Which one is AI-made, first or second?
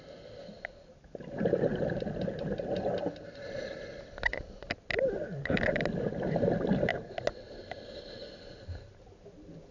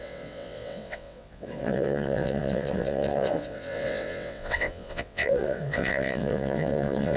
second